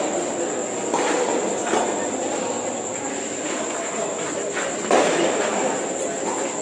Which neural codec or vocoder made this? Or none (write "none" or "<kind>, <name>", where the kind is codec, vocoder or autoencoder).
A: none